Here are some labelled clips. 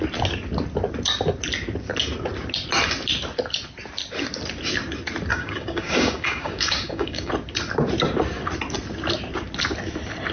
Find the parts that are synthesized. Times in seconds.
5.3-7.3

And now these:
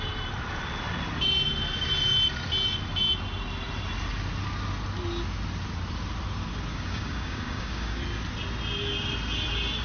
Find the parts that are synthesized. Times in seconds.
6.7-8.0